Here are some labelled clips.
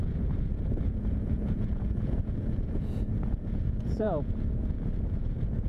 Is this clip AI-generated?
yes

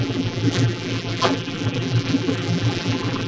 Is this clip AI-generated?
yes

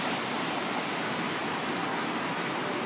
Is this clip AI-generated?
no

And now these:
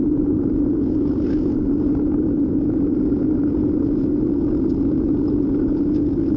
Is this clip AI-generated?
no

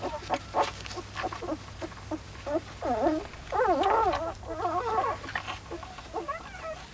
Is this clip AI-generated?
no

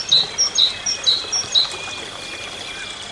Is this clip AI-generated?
no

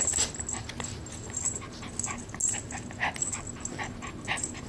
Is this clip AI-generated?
no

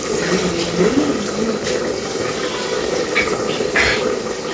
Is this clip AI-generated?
no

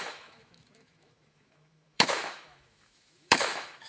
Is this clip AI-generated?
yes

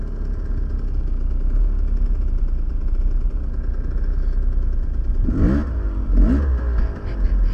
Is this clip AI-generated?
no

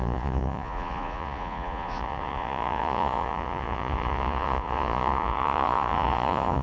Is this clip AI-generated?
yes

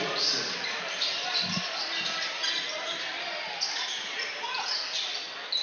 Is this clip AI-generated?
no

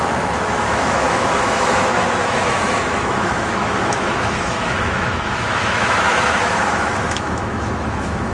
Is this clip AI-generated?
yes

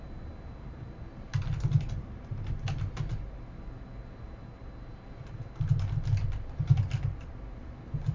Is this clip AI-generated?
no